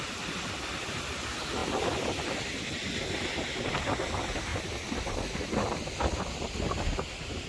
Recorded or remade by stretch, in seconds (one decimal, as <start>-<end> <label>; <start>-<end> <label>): 0.0-7.5 recorded